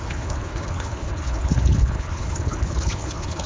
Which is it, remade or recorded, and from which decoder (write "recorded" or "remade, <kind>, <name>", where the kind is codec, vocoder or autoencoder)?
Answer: remade, codec, HILCodec